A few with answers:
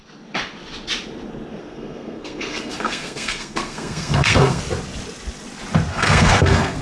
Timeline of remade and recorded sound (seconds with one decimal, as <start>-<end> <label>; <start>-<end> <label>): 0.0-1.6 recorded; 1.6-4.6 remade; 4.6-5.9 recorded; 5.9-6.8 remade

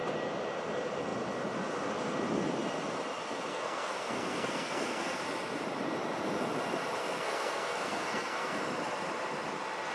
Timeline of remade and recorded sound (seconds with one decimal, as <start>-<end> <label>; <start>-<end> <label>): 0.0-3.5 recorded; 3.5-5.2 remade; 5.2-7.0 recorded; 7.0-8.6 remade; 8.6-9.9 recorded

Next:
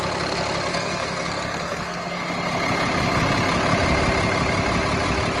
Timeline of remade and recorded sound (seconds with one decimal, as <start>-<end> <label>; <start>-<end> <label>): 0.0-0.7 recorded; 0.7-2.3 remade; 2.3-5.4 recorded

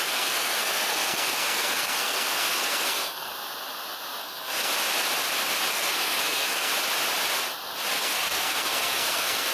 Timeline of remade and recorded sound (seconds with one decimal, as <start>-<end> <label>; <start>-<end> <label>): 0.0-3.3 remade; 3.3-4.2 recorded; 4.2-4.7 remade; 4.7-5.7 recorded; 5.7-6.7 remade; 6.7-7.9 recorded; 7.9-9.5 remade

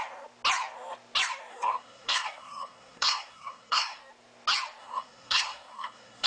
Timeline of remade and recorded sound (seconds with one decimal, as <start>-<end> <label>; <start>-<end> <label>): 0.0-1.5 recorded; 1.5-4.0 remade; 4.0-4.8 recorded; 4.8-6.3 remade

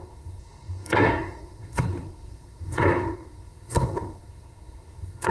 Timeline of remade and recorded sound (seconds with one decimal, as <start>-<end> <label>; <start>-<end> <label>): 0.0-5.3 remade

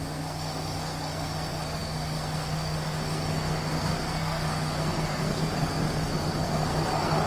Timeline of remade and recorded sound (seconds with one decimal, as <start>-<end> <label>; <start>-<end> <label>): 0.0-7.3 remade

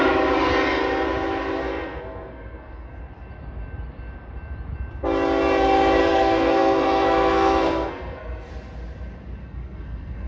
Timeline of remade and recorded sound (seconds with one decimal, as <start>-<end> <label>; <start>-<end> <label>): 0.0-1.6 recorded; 1.6-3.0 remade; 3.0-6.0 recorded; 6.0-8.5 remade; 8.5-9.4 recorded; 9.4-10.3 remade